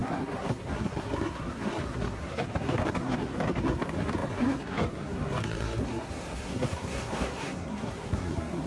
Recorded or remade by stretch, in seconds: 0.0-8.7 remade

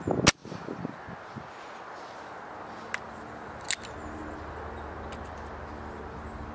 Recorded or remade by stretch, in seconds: 0.0-6.5 recorded

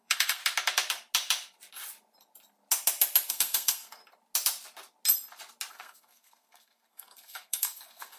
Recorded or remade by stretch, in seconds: 0.0-0.4 remade; 0.4-3.3 recorded; 3.3-4.0 remade; 4.0-5.7 recorded; 5.7-8.2 remade

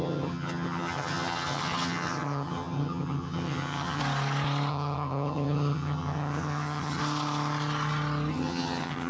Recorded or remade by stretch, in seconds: 0.0-4.0 remade; 4.0-4.7 recorded; 4.7-7.0 remade; 7.0-8.3 recorded; 8.3-9.1 remade

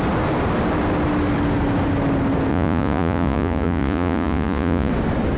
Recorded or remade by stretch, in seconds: 0.0-2.5 recorded; 2.5-4.9 remade; 4.9-5.4 recorded

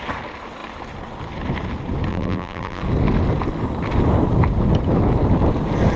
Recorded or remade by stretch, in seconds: 0.0-2.1 recorded; 2.1-2.8 remade; 2.8-6.0 recorded